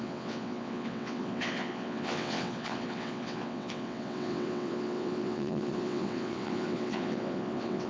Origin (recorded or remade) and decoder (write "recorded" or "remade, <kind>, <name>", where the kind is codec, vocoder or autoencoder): remade, vocoder, WaveNeXt